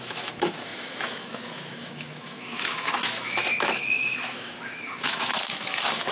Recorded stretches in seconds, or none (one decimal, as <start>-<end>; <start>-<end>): none